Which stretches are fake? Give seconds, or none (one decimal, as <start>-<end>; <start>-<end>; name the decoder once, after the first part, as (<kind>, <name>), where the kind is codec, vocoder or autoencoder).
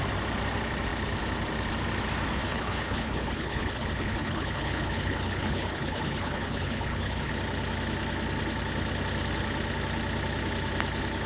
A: 2.4-7.3 (codec, HILCodec)